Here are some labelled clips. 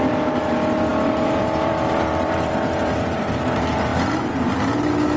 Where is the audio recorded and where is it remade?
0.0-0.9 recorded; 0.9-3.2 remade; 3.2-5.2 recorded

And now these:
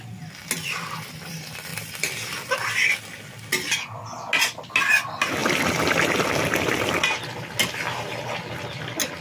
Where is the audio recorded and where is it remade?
0.0-9.2 recorded

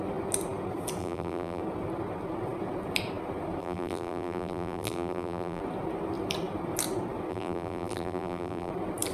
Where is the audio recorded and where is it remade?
0.0-1.0 recorded; 1.0-1.6 remade; 1.6-3.6 recorded; 3.6-5.6 remade; 5.6-7.3 recorded; 7.3-8.7 remade; 8.7-9.1 recorded